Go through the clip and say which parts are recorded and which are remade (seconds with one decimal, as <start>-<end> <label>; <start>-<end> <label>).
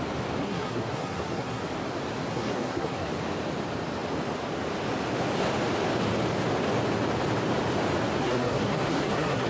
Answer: 0.0-0.4 recorded; 0.4-1.6 remade; 1.6-2.3 recorded; 2.3-3.1 remade; 3.1-8.2 recorded; 8.2-9.5 remade